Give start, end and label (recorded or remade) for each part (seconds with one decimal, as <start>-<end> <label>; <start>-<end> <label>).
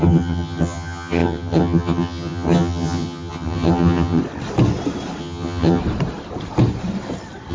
0.0-4.2 remade; 4.2-5.2 recorded; 5.2-5.8 remade; 5.8-7.5 recorded